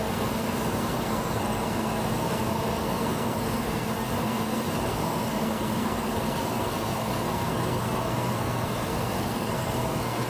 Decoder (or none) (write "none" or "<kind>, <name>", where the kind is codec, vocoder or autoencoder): codec, SNAC